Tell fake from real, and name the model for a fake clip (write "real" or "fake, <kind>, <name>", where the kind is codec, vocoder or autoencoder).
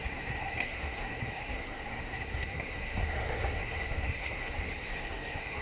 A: fake, codec, SNAC